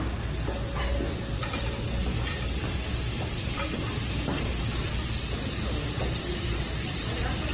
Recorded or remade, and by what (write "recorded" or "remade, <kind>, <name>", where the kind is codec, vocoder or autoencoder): recorded